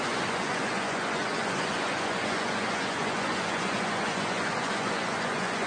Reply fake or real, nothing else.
fake